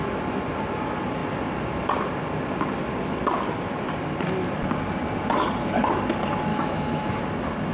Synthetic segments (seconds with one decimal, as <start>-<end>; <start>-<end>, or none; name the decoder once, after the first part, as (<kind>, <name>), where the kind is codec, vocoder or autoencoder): 6.5-7.2 (autoencoder, DAC-VAE)